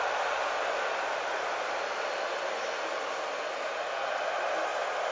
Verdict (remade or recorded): recorded